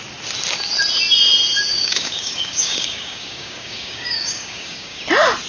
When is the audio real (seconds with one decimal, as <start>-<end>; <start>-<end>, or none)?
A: 0.0-1.7; 5.0-5.5